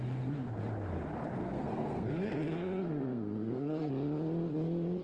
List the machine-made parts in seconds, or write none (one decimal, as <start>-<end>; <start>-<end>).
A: 1.4-3.9